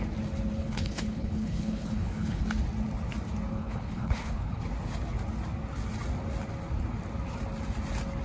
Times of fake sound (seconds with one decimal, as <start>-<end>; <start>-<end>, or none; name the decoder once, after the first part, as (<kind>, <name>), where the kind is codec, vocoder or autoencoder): 0.6-2.4 (codec, HILCodec); 3.5-4.6